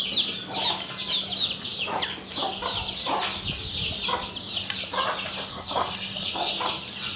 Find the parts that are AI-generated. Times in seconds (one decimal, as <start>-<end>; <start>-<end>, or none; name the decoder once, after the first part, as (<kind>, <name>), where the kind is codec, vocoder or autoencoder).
5.5-6.5 (codec, SNAC)